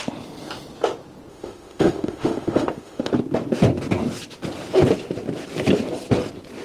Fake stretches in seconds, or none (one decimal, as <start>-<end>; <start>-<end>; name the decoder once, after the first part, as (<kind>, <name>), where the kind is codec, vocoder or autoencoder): 1.3-3.1 (autoencoder, DAC-VAE)